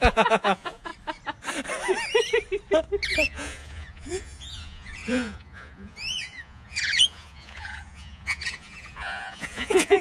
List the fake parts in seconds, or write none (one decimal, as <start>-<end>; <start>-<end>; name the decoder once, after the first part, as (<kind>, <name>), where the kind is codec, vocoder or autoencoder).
0.0-0.9 (vocoder, Vocos); 3.1-10.0